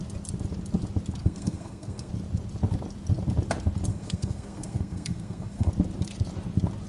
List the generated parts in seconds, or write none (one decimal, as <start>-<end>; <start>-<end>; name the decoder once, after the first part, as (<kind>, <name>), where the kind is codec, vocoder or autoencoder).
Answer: 1.2-2.1 (codec, SNAC); 3.9-5.7